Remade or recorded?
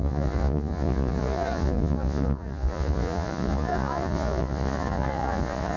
remade